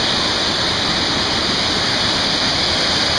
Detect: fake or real real